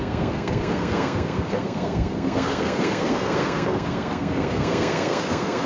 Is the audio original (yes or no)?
no